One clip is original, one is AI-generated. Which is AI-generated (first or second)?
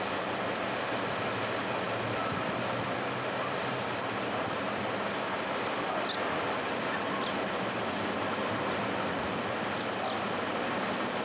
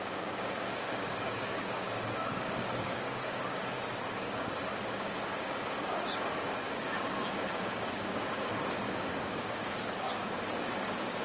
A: second